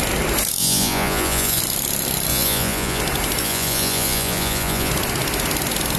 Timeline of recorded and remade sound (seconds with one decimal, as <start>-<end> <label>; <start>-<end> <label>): 0.0-0.6 recorded; 0.6-1.6 remade; 1.6-2.3 recorded; 2.3-3.0 remade; 3.0-3.4 recorded; 3.4-4.9 remade; 4.9-6.0 recorded